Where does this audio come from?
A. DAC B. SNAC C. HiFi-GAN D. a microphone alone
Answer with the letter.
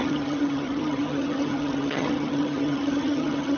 C